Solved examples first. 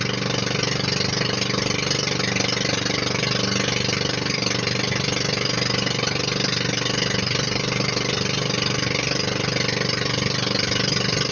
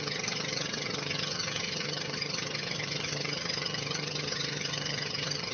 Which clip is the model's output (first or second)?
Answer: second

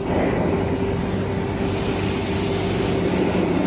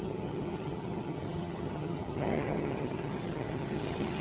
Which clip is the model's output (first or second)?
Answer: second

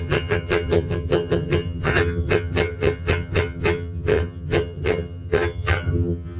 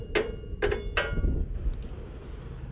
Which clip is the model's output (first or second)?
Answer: first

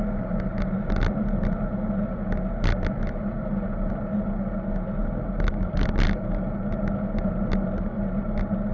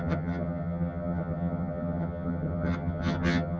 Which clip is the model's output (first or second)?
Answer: second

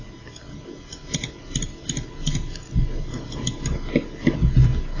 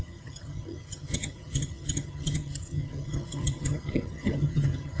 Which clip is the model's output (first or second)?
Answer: second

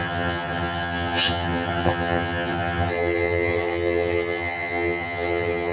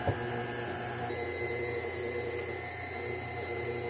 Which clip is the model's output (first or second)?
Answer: first